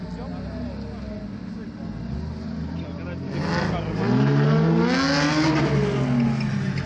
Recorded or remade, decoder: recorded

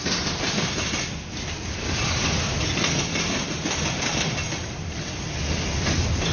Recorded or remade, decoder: recorded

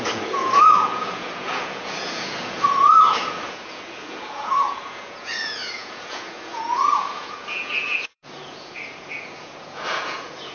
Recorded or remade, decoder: remade, vocoder, Vocos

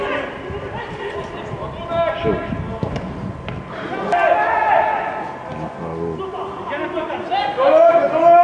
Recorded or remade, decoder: recorded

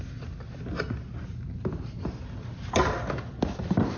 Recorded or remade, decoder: recorded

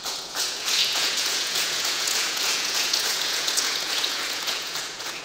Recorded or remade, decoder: remade, vocoder, Vocos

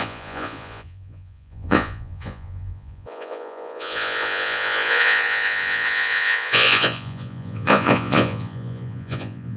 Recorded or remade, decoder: remade, vocoder, Vocos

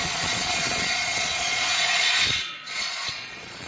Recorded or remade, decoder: remade, vocoder, Vocos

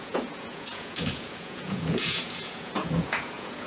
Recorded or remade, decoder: remade, vocoder, Vocos